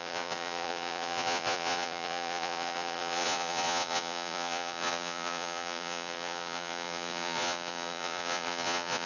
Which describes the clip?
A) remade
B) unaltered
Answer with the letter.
A